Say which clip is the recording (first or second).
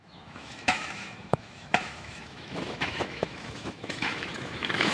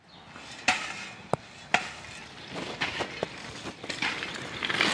second